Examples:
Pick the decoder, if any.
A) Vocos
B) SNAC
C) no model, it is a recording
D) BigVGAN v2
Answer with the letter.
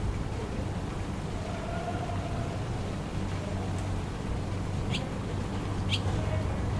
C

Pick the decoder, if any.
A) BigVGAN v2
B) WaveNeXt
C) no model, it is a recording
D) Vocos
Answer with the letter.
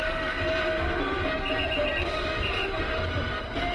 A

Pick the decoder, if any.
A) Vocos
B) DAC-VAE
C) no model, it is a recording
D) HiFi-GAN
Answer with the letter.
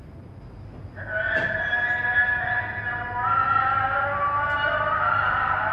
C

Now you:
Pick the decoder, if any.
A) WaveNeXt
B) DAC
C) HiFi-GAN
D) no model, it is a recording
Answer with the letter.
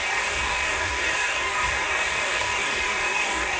B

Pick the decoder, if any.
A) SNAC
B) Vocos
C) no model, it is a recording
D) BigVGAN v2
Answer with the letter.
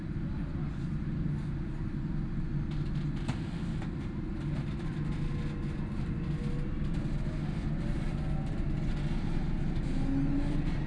C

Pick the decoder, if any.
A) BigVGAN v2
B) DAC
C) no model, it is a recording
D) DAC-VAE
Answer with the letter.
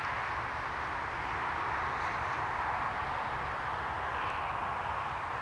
C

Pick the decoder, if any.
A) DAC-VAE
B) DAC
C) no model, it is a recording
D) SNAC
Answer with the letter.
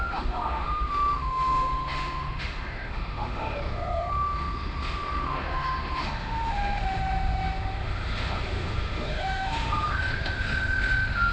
A